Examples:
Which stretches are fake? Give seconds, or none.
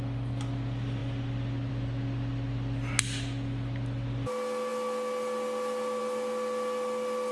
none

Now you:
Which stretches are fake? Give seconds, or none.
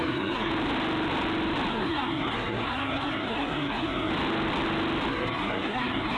0.0-0.5 (codec, SNAC); 1.7-4.1; 5.1-6.2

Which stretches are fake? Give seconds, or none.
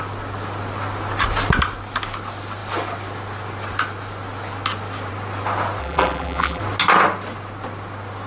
5.8-6.6 (vocoder, BigVGAN v2)